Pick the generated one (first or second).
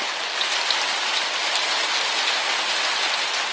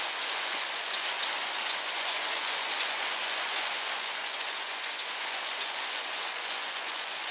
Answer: second